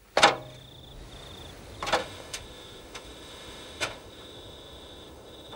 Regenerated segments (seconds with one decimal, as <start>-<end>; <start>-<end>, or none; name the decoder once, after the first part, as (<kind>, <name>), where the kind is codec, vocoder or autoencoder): 2.0-5.6 (autoencoder, DAC-VAE)